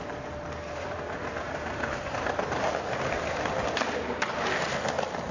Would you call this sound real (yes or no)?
yes